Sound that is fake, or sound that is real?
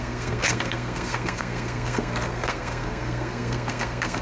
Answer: fake